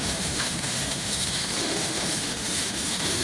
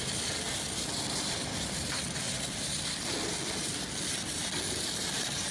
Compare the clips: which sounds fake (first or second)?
first